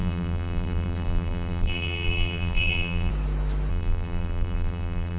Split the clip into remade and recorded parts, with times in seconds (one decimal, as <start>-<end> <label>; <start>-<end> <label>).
0.0-3.1 remade; 3.1-3.7 recorded; 3.7-5.2 remade